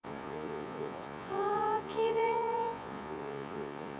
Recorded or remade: remade